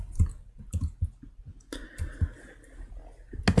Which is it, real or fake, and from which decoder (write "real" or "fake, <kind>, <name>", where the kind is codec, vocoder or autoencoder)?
real